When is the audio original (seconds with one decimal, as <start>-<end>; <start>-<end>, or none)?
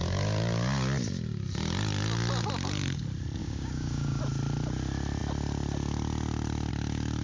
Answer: 0.0-3.4; 4.2-7.2